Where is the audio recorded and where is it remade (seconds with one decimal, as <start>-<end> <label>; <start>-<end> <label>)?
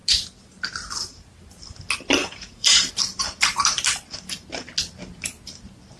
0.0-2.2 recorded; 2.2-2.9 remade; 2.9-6.0 recorded